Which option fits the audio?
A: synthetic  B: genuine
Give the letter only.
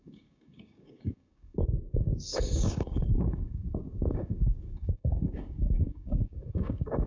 A